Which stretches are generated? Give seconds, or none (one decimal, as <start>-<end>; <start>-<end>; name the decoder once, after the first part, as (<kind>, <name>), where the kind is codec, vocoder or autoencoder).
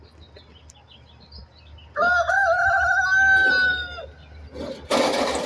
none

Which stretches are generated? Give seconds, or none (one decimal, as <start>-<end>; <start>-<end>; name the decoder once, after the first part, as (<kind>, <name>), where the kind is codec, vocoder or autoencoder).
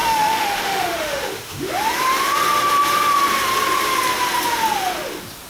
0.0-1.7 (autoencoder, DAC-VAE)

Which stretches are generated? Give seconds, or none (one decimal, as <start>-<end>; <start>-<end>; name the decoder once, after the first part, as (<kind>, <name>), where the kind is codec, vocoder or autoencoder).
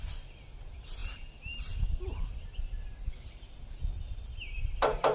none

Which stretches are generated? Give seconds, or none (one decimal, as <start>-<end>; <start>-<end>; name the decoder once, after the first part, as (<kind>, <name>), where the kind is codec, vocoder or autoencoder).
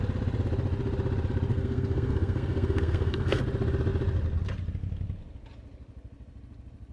1.5-3.4 (codec, SNAC)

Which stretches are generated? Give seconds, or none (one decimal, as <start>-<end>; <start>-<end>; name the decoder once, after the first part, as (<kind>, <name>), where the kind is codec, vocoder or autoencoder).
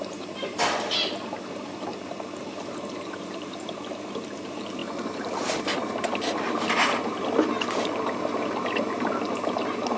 0.0-10.0 (vocoder, BigVGAN v2)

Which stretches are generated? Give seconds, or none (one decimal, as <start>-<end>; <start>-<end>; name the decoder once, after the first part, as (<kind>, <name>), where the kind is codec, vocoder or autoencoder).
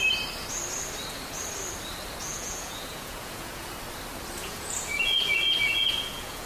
2.2-3.7 (vocoder, Vocos); 4.4-6.5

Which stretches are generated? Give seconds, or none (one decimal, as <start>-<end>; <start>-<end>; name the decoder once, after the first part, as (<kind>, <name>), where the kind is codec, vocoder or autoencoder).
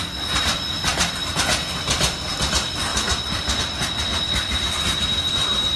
none